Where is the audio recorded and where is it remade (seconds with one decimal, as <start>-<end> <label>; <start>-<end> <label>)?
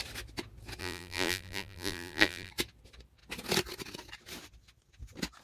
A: 0.0-0.8 recorded; 0.8-2.5 remade; 2.5-5.4 recorded